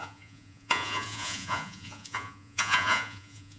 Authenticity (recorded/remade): remade